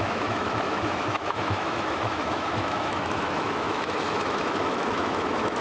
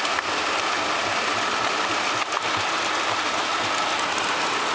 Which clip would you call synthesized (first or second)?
first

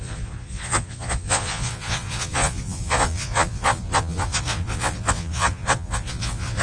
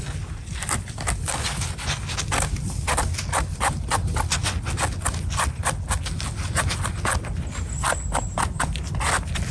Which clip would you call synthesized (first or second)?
first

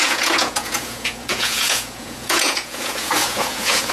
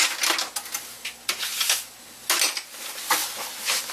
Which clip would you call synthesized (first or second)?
first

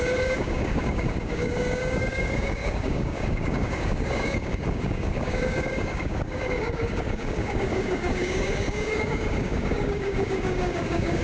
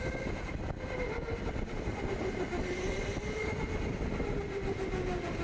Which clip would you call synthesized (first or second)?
first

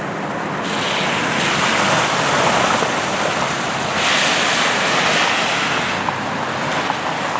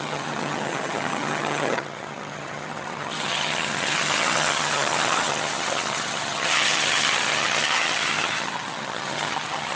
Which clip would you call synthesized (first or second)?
second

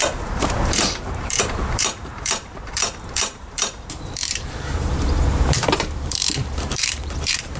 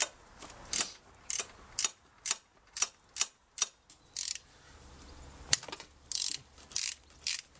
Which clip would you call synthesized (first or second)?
first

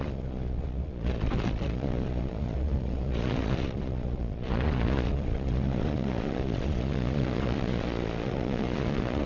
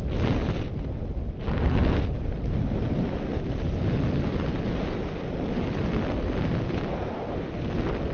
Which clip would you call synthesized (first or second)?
first